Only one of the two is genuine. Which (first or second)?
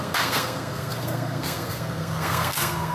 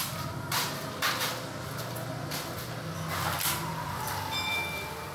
second